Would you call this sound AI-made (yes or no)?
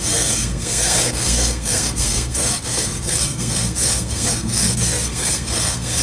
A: yes